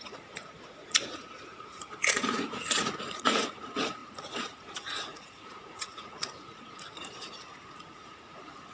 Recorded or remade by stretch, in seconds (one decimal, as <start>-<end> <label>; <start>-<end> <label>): 0.0-8.7 remade